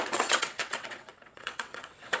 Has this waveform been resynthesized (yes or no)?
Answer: yes